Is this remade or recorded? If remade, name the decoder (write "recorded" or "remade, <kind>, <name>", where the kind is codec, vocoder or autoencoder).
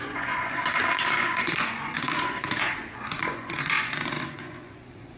remade, vocoder, Vocos